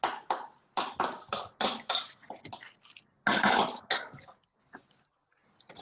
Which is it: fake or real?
real